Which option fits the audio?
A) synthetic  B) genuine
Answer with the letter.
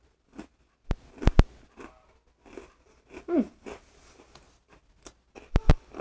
B